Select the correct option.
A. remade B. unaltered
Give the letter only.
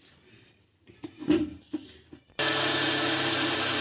A